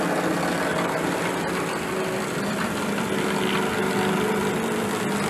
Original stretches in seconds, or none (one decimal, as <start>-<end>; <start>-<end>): 0.0-5.3